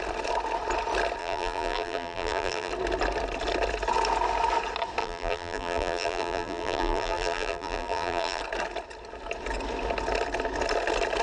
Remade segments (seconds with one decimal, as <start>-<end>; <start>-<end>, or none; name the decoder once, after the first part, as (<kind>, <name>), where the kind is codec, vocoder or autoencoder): 1.2-2.7 (vocoder, BigVGAN v2); 5.0-8.4

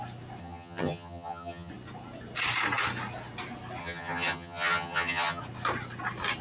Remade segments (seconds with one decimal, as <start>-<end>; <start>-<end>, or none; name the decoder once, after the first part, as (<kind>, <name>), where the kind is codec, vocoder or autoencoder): 0.4-1.7 (vocoder, HiFi-GAN); 3.8-5.4

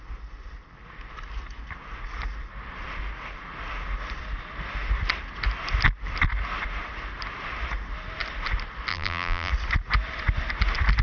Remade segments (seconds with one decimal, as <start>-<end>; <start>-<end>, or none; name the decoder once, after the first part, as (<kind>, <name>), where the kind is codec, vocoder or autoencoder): 8.9-9.5 (vocoder, BigVGAN v2)

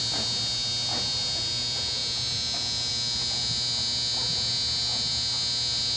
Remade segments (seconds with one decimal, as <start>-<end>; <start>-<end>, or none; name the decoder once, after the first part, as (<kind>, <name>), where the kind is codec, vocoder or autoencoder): none